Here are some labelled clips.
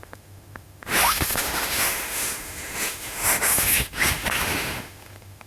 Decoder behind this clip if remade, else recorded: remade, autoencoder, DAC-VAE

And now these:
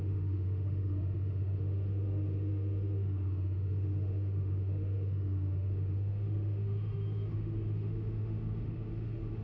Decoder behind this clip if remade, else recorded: remade, autoencoder, DAC-VAE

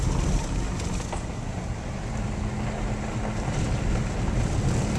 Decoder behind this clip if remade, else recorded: recorded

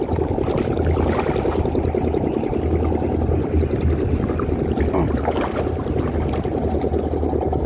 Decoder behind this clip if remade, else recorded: recorded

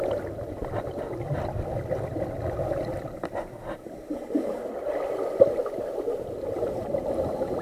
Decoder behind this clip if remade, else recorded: recorded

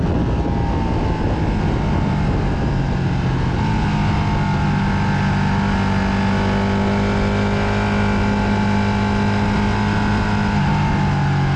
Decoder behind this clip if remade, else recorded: recorded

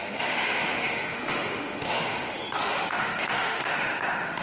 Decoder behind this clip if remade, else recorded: remade, autoencoder, DAC-VAE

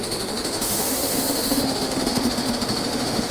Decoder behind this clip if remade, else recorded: remade, autoencoder, DAC-VAE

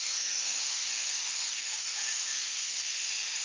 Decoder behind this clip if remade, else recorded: remade, autoencoder, DAC-VAE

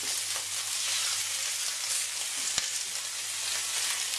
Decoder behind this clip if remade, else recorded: recorded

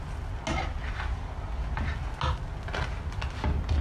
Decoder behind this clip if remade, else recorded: recorded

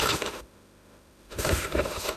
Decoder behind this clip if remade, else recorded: remade, autoencoder, DAC-VAE